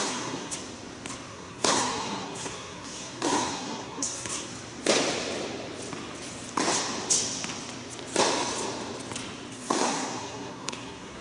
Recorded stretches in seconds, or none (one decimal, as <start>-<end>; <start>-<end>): 0.6-1.3; 4.5-9.5